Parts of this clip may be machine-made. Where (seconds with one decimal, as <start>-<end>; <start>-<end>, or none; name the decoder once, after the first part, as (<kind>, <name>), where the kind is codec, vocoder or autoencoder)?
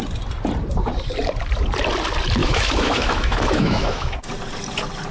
2.4-4.3 (autoencoder, DAC-VAE)